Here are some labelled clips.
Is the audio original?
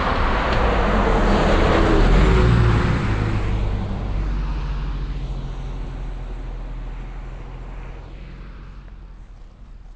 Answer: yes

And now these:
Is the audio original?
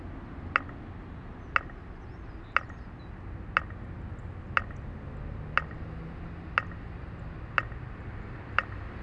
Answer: yes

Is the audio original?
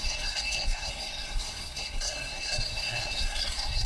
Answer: no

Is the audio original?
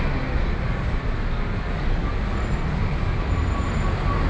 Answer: yes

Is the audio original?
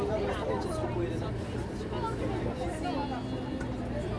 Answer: yes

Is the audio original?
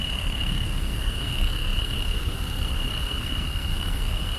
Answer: no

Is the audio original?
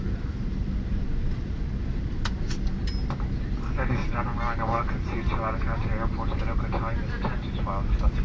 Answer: yes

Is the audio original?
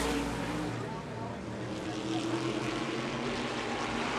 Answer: yes